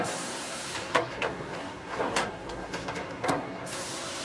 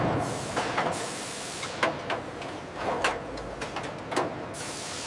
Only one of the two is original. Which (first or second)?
second